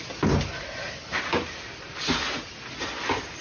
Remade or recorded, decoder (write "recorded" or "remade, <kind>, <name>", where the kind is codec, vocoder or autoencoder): recorded